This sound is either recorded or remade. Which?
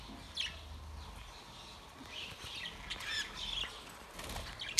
recorded